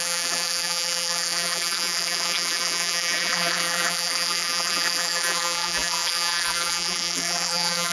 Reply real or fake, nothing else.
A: fake